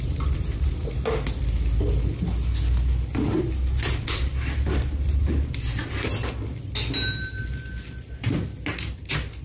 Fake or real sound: real